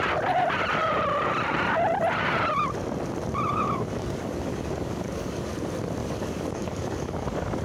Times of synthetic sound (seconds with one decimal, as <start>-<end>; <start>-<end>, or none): 3.5-5.5; 6.0-7.6